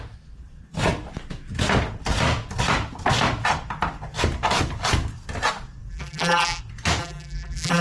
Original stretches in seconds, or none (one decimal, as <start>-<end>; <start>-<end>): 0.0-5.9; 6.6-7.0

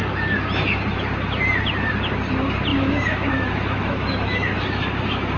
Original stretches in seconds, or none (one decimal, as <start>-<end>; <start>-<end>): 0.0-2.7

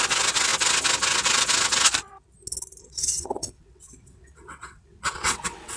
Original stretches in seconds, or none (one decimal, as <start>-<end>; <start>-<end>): 0.0-2.8